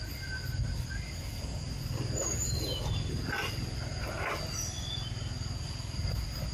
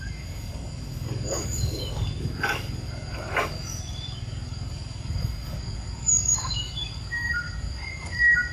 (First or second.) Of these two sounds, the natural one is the first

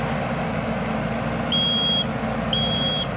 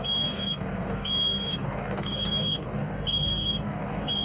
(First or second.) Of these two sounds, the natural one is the first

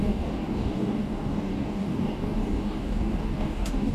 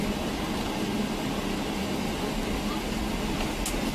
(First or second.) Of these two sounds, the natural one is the second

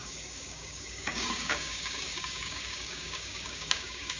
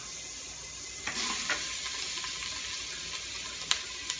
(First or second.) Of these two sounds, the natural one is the second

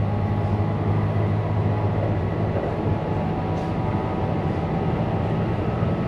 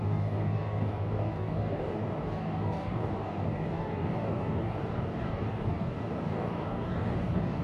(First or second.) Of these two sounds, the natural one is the first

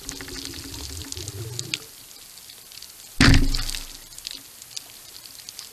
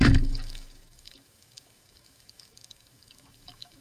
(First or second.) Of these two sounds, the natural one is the first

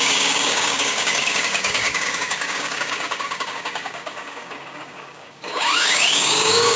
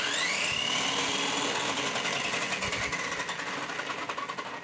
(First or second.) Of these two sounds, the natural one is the second